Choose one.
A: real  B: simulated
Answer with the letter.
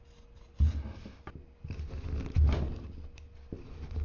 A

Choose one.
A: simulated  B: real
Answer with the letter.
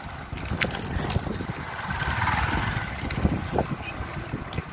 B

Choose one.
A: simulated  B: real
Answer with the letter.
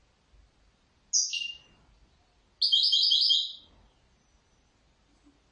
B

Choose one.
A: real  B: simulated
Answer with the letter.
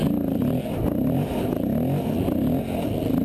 A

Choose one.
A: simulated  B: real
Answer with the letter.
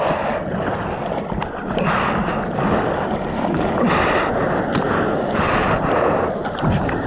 B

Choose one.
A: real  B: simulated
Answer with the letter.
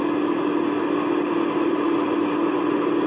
A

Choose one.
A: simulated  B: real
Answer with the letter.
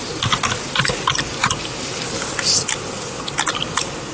B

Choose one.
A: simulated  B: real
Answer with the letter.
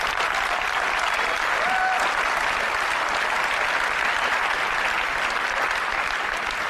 B